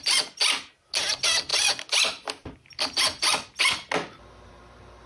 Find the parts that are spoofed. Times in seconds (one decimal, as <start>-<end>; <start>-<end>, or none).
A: none